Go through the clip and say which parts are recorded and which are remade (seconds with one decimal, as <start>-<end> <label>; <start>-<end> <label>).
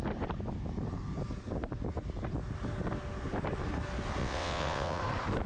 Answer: 0.0-4.2 recorded; 4.2-5.0 remade; 5.0-5.5 recorded